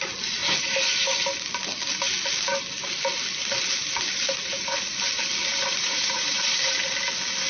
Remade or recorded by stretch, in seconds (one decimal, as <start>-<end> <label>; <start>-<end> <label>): 0.0-5.7 recorded; 5.7-6.4 remade; 6.4-7.5 recorded